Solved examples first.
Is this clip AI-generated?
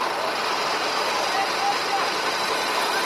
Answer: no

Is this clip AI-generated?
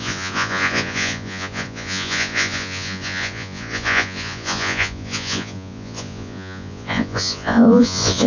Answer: yes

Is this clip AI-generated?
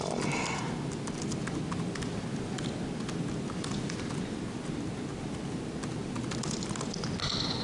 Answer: no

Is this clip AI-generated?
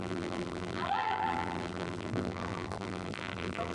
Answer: yes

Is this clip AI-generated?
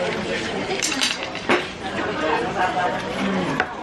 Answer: yes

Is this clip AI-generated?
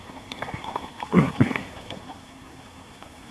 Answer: yes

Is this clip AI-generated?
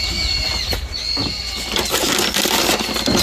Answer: no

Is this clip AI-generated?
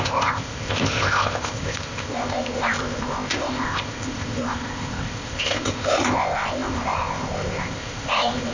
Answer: yes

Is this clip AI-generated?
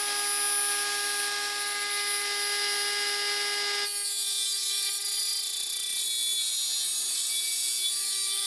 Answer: no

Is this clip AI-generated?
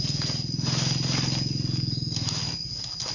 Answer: no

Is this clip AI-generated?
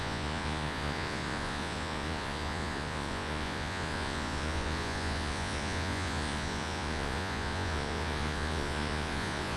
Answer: yes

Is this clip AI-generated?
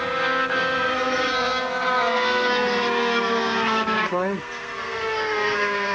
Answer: yes